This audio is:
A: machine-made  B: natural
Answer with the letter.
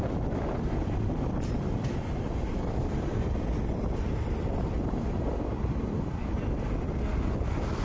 B